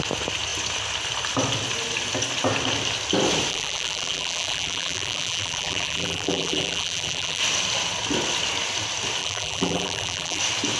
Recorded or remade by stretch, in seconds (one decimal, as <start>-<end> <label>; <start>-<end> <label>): 0.0-3.5 recorded; 3.5-7.4 remade; 7.4-9.2 recorded; 9.2-10.4 remade; 10.4-10.8 recorded